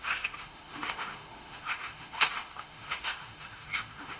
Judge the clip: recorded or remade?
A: remade